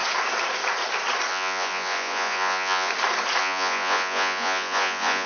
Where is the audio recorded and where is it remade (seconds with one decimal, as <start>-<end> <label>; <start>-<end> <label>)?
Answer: 0.0-1.3 recorded; 1.3-2.9 remade; 2.9-3.4 recorded; 3.4-5.3 remade